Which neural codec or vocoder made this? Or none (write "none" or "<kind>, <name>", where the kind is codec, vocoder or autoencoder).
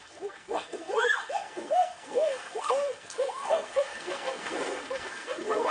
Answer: codec, SNAC